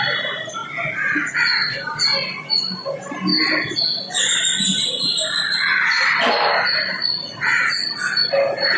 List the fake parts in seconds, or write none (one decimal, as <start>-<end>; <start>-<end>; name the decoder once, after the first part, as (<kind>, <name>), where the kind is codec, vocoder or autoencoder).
none